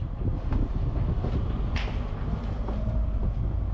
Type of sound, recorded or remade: recorded